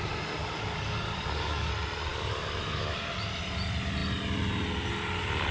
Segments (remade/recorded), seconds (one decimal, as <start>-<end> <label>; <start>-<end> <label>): 0.0-0.4 recorded; 0.4-1.7 remade; 1.7-2.1 recorded; 2.1-3.1 remade; 3.1-5.5 recorded